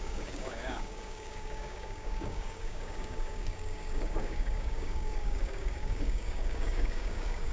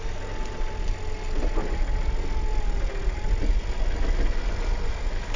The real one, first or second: second